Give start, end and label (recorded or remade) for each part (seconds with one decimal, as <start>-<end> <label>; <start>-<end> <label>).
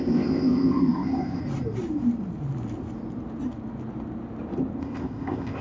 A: 0.0-1.4 remade; 1.4-4.8 recorded; 4.8-5.6 remade